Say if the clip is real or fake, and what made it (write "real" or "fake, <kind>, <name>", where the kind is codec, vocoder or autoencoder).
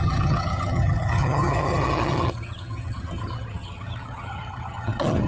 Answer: fake, vocoder, HiFi-GAN